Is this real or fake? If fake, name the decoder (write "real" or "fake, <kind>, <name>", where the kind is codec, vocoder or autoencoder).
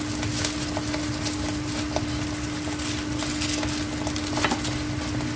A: real